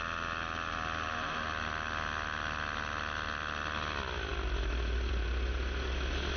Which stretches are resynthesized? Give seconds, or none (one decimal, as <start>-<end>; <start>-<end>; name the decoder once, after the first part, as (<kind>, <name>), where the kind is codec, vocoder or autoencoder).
none